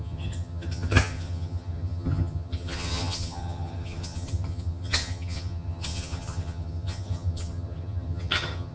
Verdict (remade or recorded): remade